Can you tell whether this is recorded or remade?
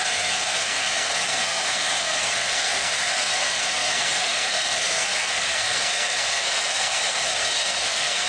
remade